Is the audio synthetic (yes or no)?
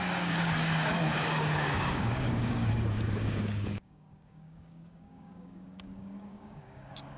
yes